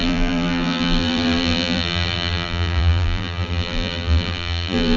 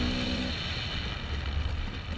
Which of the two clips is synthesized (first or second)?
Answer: first